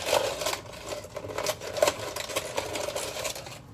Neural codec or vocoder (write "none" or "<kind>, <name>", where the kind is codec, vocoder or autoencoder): none